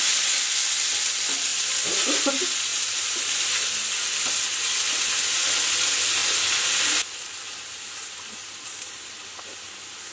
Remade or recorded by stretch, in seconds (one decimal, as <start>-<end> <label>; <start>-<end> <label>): 0.0-2.7 recorded; 2.7-3.4 remade; 3.4-10.1 recorded